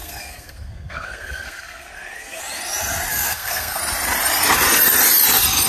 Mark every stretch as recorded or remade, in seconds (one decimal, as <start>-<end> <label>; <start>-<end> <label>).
0.0-2.4 remade; 2.4-3.1 recorded; 3.1-3.8 remade; 3.8-5.7 recorded